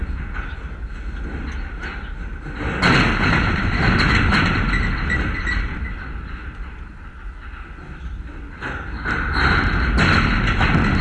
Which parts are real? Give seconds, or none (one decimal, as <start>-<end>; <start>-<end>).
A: 0.0-11.0